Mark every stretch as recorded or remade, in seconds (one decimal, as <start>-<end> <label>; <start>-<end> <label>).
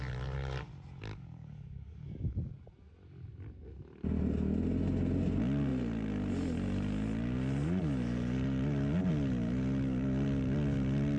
0.0-1.1 recorded; 1.1-2.5 remade; 2.5-11.2 recorded